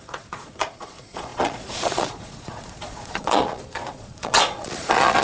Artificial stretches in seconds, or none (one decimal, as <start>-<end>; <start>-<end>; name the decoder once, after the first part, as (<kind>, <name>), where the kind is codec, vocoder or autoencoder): 0.0-5.2 (vocoder, Vocos)